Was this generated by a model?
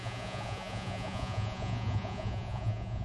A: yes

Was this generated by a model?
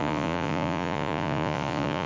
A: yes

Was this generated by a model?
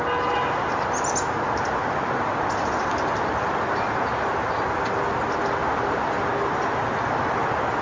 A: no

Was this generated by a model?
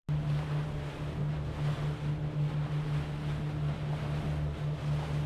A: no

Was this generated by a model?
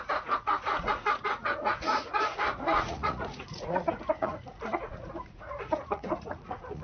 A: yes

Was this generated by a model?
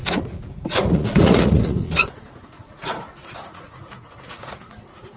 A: yes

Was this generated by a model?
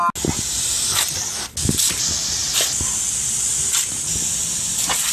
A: no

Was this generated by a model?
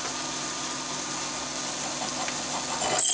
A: no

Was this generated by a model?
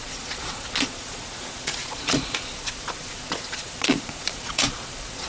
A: yes